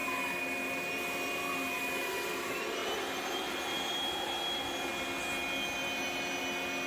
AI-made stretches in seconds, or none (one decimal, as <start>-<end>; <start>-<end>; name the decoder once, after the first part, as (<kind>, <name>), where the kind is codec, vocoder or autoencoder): none